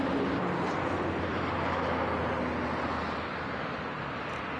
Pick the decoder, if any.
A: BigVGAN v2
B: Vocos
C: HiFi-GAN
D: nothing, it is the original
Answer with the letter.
D